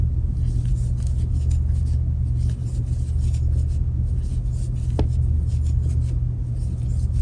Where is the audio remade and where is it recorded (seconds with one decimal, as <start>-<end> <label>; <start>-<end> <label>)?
0.0-7.2 recorded